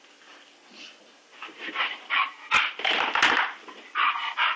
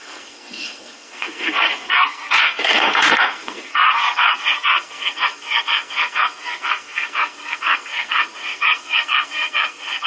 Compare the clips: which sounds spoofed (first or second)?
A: second